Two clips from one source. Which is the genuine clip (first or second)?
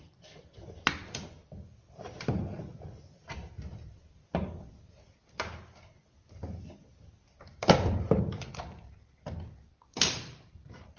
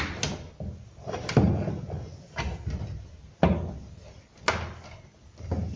second